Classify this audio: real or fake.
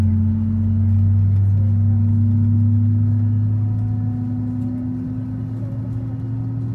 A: real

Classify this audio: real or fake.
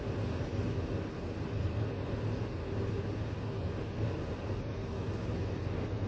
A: real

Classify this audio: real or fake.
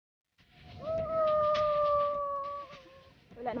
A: real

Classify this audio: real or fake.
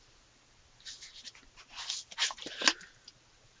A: real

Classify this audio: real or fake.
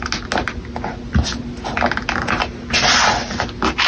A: real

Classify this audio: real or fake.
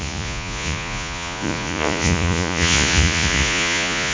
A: fake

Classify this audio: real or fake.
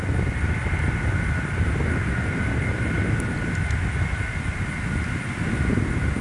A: real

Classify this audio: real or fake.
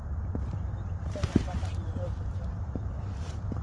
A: fake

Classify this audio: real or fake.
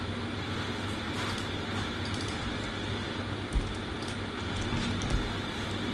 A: real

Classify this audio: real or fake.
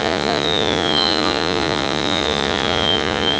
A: fake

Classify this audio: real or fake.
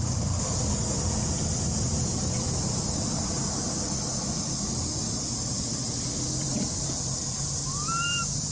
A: fake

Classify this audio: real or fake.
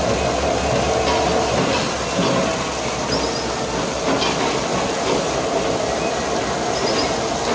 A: real